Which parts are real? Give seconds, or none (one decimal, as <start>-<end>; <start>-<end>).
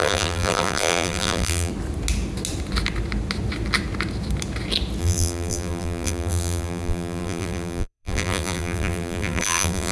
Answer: 1.7-5.0